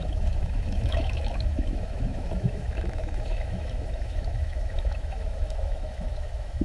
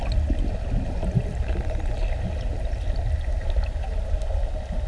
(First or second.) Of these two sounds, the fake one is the first